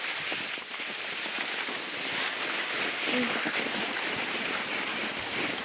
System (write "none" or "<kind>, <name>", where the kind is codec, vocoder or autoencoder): none